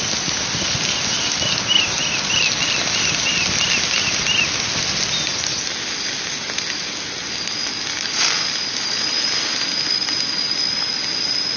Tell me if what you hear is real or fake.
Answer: real